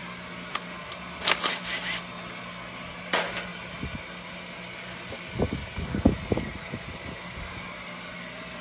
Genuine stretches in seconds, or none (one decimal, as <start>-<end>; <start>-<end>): 0.0-8.6

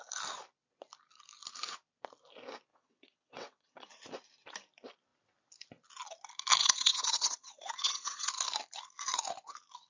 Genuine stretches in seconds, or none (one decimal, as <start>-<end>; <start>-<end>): 0.0-2.7; 4.0-6.6; 8.3-9.9

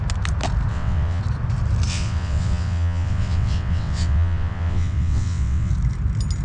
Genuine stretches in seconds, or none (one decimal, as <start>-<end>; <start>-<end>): 0.0-0.7; 1.2-1.9; 5.7-6.4

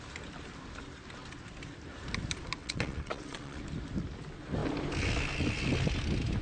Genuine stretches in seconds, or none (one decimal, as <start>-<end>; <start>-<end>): 0.0-2.6; 3.6-6.4

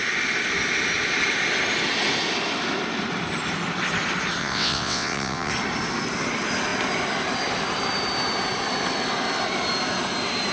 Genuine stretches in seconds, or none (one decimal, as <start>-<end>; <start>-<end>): 0.0-4.4; 5.5-10.5